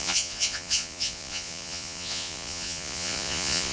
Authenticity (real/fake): fake